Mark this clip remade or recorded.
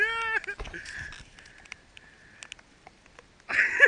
recorded